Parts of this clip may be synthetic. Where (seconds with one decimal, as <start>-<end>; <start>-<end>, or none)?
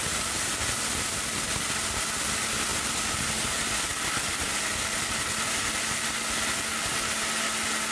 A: none